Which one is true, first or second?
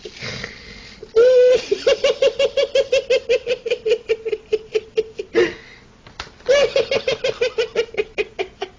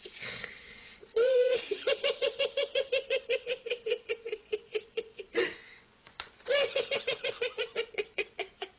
first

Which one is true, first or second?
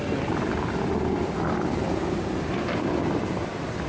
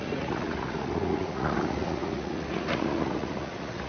first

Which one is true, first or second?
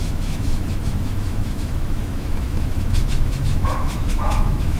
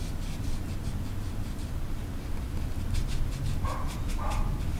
second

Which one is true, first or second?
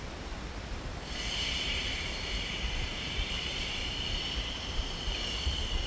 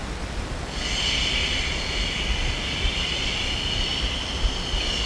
second